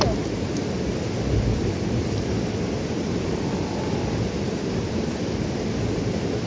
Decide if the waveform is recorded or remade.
recorded